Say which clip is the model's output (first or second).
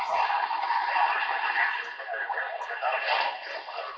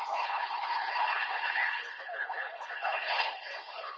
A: second